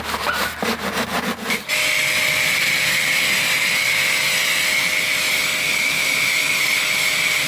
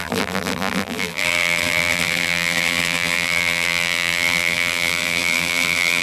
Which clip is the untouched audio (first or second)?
first